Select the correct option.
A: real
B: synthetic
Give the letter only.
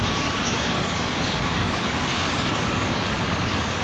B